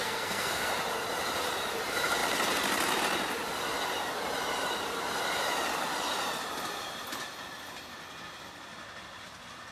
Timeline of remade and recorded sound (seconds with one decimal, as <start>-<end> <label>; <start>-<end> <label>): 0.0-0.7 remade; 0.7-9.7 recorded